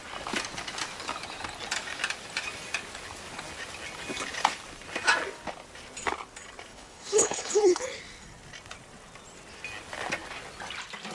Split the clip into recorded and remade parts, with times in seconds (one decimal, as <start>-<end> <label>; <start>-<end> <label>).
0.0-6.7 recorded; 6.7-8.0 remade; 8.0-11.1 recorded